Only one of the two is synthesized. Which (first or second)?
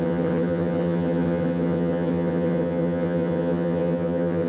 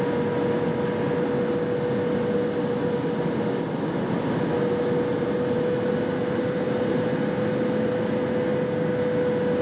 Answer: first